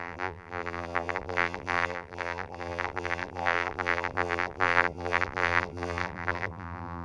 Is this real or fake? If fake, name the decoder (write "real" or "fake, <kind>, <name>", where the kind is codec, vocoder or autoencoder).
fake, vocoder, BigVGAN v2